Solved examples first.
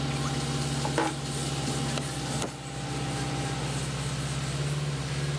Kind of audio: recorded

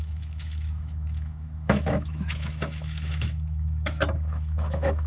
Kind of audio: remade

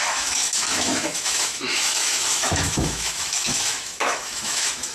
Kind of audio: remade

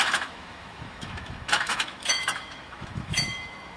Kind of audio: remade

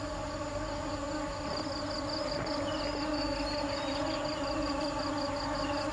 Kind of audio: recorded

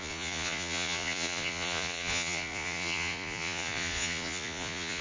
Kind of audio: remade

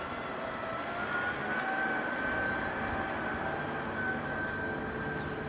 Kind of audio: recorded